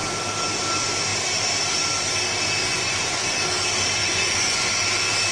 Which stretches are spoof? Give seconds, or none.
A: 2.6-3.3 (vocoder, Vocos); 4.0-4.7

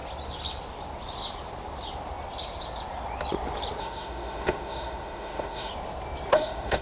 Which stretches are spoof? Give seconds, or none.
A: 3.8-5.7 (autoencoder, DAC-VAE); 6.3-6.8

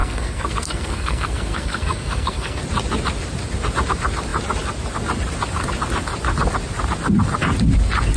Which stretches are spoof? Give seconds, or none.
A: 0.0-2.6 (codec, SNAC)

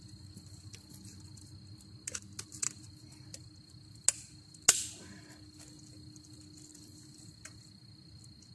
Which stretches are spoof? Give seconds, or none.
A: 6.7-7.3 (vocoder, BigVGAN v2)

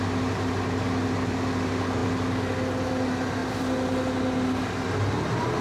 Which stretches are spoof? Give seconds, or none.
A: none

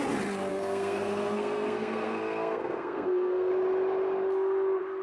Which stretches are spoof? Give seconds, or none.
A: 0.5-3.5 (codec, SNAC)

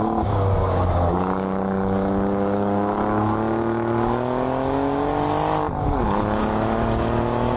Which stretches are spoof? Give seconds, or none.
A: 0.0-5.1 (codec, DAC); 6.4-7.6